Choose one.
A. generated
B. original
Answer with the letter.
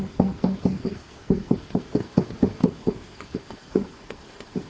A